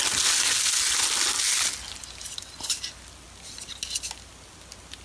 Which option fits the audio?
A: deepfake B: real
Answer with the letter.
B